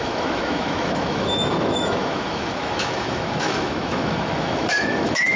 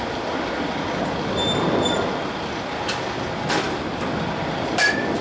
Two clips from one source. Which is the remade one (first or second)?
first